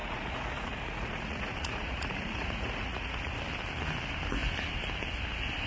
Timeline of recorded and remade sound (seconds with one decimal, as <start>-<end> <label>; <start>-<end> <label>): 0.0-3.4 remade; 3.4-5.7 recorded

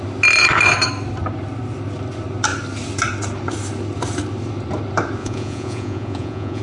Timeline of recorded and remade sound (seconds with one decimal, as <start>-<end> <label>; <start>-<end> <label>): 0.0-5.2 recorded; 5.2-6.6 remade

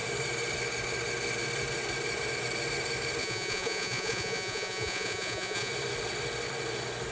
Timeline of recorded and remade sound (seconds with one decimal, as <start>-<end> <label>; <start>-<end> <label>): 0.0-3.2 recorded; 3.2-5.7 remade; 5.7-7.1 recorded

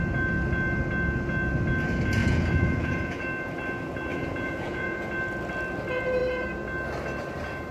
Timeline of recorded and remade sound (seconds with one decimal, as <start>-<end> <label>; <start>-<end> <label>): 0.0-2.2 recorded; 2.2-3.2 remade; 3.2-4.1 recorded; 4.1-5.1 remade; 5.1-7.7 recorded